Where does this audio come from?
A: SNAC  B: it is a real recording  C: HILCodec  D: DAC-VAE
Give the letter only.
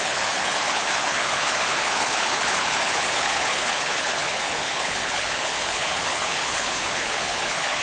C